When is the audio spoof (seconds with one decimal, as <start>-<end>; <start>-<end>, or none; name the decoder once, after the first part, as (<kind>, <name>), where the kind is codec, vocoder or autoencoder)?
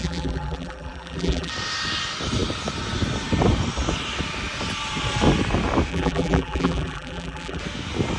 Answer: 0.0-1.5 (vocoder, BigVGAN v2); 5.9-7.6